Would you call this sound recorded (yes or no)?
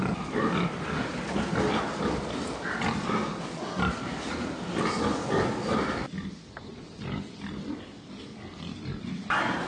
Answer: yes